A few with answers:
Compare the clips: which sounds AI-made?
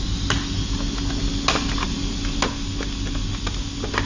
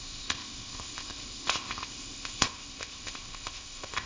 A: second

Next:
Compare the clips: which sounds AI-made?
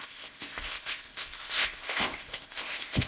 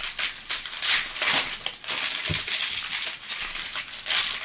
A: first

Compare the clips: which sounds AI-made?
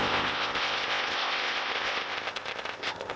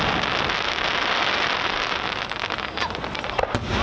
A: first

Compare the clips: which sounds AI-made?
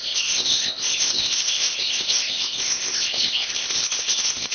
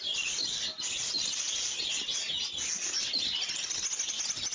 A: first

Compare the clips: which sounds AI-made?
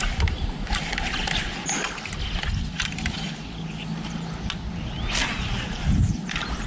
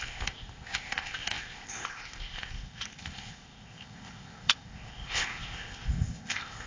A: second